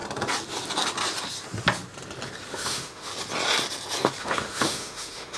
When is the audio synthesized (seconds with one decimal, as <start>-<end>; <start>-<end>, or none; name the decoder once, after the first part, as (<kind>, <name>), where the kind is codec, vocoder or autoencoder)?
2.5-3.1 (autoencoder, DAC-VAE); 4.2-5.4